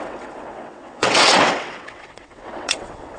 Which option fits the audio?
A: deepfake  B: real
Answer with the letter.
A